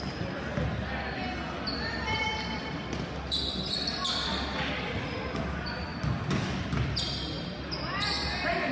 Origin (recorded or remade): recorded